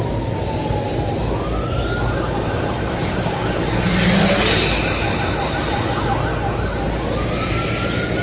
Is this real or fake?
real